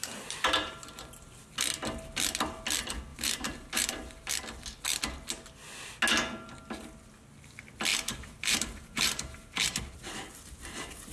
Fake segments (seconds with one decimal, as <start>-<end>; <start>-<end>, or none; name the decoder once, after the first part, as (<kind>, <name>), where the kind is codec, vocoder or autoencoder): 0.0-0.8 (vocoder, BigVGAN v2); 3.1-4.3; 7.9-9.8